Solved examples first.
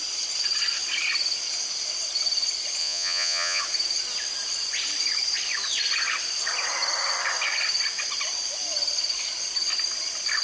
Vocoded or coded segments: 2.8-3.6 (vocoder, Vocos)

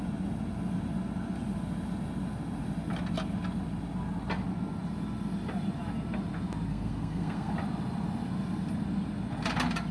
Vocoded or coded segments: 6.7-7.5 (codec, SNAC)

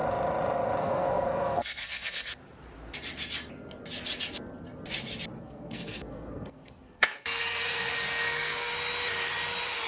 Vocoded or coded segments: 0.8-2.4 (codec, SNAC); 5.4-8.7

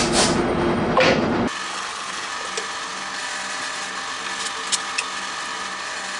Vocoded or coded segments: 1.7-2.3 (codec, HILCodec)

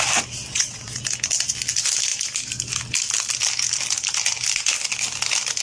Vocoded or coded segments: 0.5-1.0 (vocoder, WaveNeXt)

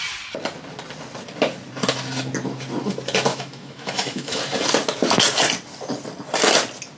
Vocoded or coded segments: 3.3-4.4 (autoencoder, DAC-VAE)